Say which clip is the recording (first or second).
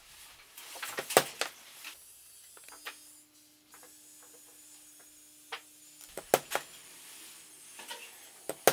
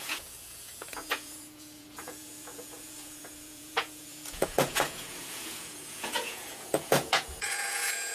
first